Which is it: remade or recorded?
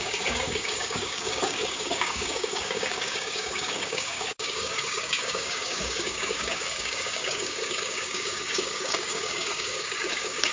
remade